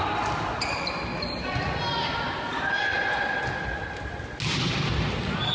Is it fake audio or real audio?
real